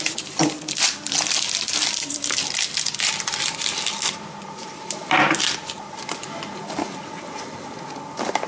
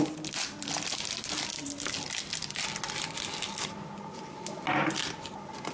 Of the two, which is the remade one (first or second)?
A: first